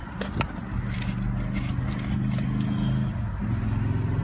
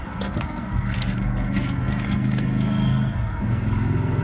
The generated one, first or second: second